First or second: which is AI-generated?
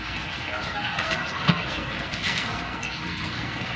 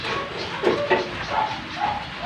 first